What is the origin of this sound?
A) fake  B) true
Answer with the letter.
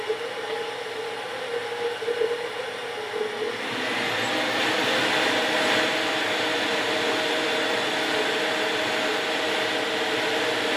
B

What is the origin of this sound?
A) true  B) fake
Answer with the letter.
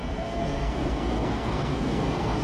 B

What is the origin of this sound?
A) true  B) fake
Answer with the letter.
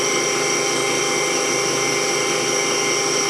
A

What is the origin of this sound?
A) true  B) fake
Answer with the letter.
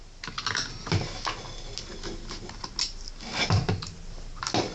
A